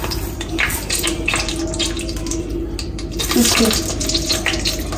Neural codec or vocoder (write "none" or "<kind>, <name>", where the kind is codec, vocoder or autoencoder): none